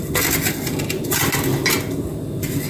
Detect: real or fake real